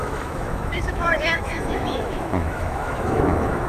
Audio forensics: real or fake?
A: fake